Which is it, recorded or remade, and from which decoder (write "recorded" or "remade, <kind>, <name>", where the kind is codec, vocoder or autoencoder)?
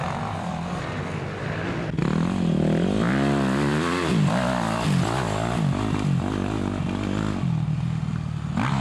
recorded